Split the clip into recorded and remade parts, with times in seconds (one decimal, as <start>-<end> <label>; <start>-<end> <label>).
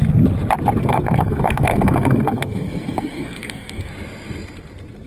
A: 0.0-0.8 recorded; 0.8-3.9 remade; 3.9-5.1 recorded